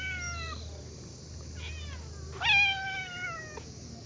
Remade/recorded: recorded